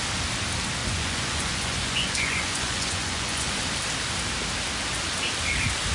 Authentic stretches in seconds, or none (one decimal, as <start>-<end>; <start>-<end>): 0.0-0.8; 3.6-5.9